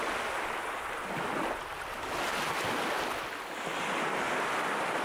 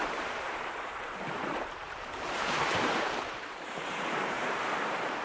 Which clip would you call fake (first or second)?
second